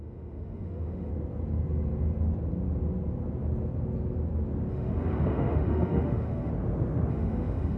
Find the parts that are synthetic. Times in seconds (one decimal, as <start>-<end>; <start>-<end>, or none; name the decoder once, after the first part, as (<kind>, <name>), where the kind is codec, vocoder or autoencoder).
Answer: 0.0-1.1 (autoencoder, DAC-VAE); 4.7-6.5; 7.1-7.8